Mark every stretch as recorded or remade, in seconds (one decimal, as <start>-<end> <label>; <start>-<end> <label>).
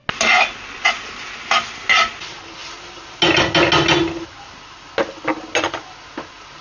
0.0-6.6 recorded